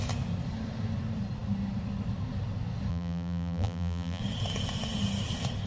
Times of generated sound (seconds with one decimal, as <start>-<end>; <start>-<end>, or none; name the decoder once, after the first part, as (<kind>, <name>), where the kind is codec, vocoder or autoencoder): 2.9-4.2 (vocoder, BigVGAN v2)